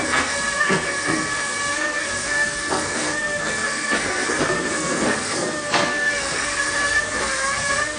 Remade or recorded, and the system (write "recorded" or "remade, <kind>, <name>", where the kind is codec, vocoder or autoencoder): remade, codec, SNAC